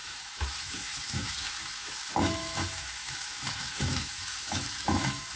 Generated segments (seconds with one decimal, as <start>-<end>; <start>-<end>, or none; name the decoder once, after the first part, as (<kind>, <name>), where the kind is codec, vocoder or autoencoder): 0.0-5.4 (autoencoder, DAC-VAE)